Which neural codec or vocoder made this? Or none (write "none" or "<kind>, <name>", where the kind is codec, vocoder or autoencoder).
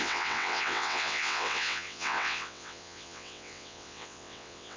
vocoder, WaveNeXt